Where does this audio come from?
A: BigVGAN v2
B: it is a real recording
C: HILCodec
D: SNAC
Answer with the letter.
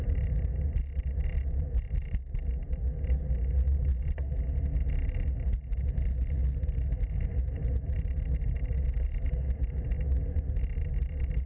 B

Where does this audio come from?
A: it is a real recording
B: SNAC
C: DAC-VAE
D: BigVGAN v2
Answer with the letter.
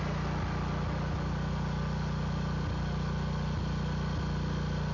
A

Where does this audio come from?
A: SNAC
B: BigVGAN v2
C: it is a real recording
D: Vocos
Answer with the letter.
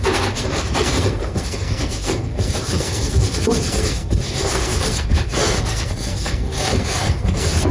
A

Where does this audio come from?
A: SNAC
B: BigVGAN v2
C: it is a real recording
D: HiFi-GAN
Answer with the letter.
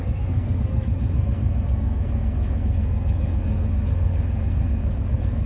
A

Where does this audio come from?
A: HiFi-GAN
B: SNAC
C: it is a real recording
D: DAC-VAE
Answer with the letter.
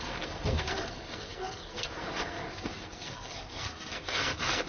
B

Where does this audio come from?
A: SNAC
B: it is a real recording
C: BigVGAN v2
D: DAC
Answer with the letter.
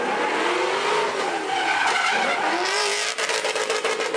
B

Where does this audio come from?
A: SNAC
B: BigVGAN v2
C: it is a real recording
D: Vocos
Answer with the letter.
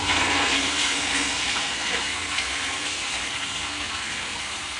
A